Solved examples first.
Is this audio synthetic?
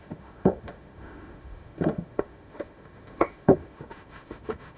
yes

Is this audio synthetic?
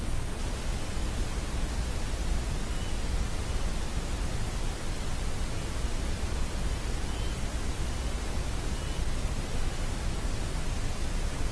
no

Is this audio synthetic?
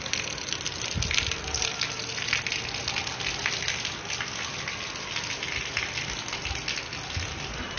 no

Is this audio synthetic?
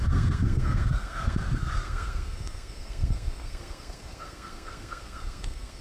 yes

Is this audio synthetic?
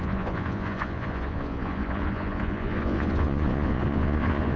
yes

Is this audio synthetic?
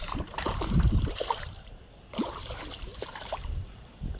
yes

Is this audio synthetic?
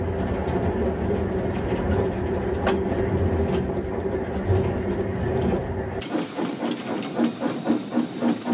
no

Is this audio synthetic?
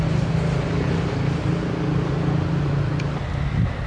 no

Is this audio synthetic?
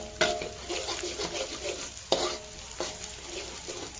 no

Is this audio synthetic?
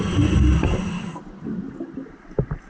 no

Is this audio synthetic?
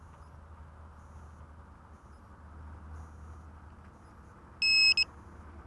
no